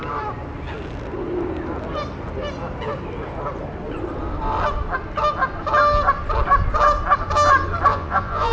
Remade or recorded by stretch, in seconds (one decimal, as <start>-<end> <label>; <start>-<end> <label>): 0.0-7.9 recorded; 7.9-8.5 remade